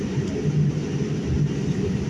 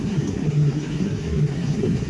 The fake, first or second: second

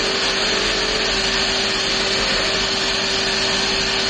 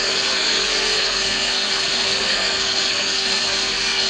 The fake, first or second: second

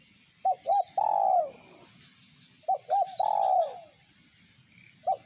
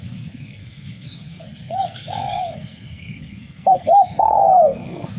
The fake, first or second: second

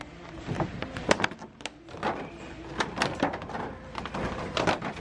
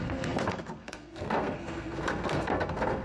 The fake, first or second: second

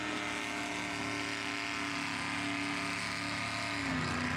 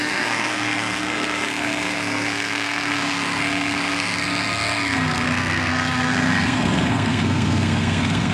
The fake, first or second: second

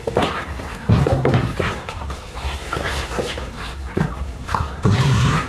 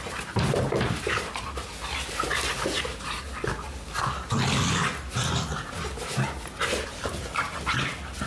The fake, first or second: first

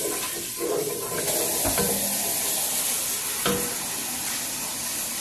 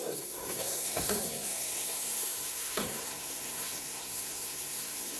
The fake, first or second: second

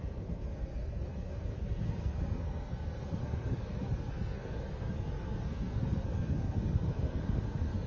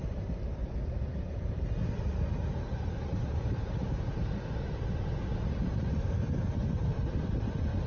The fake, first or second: first